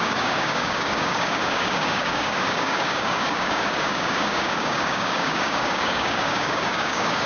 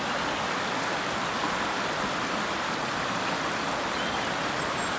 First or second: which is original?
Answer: second